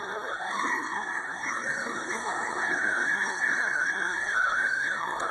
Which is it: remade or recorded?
remade